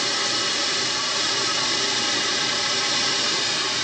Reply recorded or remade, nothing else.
recorded